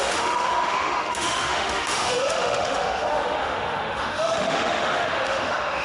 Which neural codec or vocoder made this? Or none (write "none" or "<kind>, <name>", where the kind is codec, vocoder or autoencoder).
autoencoder, DAC-VAE